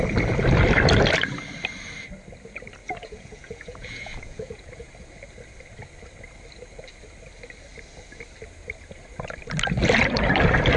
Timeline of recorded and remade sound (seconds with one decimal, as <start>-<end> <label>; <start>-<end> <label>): 0.0-2.8 recorded; 2.8-4.9 remade; 4.9-10.8 recorded